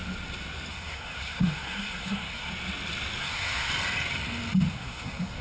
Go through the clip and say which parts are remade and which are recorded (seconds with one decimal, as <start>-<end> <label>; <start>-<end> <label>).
0.0-0.7 recorded; 0.7-2.5 remade; 2.5-3.2 recorded; 3.2-3.7 remade; 3.7-4.7 recorded; 4.7-5.4 remade